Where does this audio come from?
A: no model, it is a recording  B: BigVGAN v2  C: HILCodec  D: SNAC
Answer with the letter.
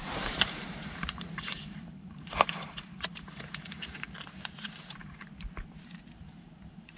B